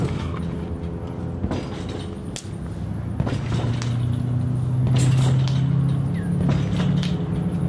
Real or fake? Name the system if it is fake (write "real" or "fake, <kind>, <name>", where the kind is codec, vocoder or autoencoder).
real